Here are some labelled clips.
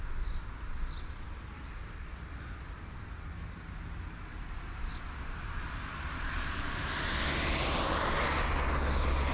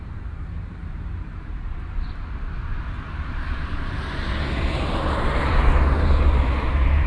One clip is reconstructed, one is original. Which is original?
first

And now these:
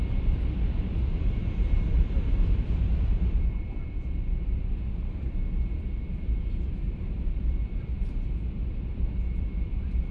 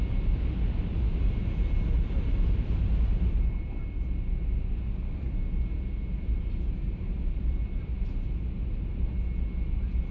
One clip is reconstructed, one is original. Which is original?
second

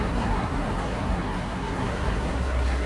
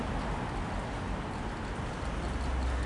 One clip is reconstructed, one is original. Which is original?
second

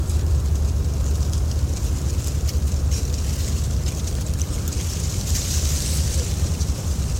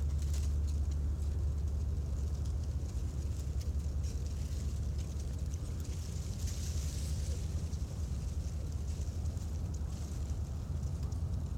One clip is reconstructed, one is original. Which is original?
second